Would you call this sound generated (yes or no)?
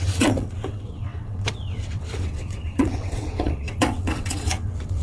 yes